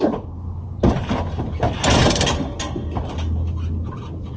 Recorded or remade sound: recorded